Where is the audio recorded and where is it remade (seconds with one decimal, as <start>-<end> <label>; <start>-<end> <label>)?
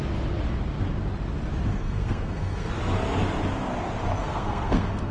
0.0-1.7 recorded; 1.7-2.7 remade; 2.7-4.2 recorded; 4.2-5.1 remade